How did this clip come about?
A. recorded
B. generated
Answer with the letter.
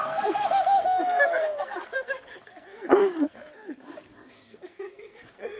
B